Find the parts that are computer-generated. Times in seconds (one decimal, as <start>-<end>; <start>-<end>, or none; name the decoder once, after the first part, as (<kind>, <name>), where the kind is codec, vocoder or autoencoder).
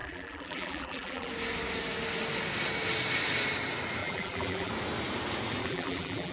0.0-1.3 (vocoder, BigVGAN v2); 4.0-4.7; 5.6-6.3